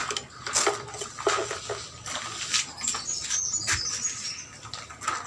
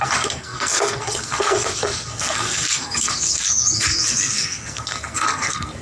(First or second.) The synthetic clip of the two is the second